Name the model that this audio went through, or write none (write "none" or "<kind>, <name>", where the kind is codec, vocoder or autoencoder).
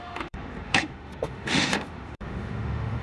autoencoder, DAC-VAE